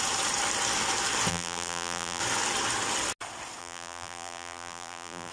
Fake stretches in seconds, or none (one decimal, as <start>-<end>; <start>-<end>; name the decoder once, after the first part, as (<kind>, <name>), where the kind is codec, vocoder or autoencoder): 1.3-2.2 (vocoder, BigVGAN v2); 3.6-5.3